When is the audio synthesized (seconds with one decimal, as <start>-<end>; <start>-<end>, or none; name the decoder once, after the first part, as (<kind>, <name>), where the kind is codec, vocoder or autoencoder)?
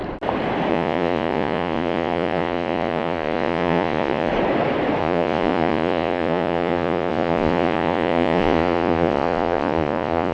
0.7-4.3 (vocoder, Vocos); 5.0-10.3